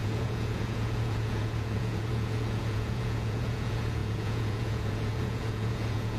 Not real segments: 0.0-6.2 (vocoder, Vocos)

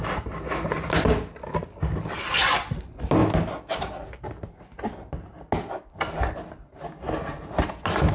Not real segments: none

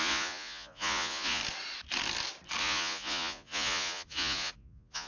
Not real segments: 0.0-1.4 (vocoder, Vocos); 2.6-5.1

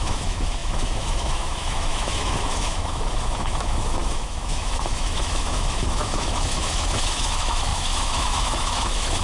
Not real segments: 0.0-9.2 (autoencoder, DAC-VAE)

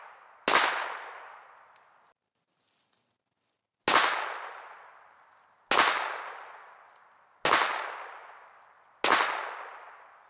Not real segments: none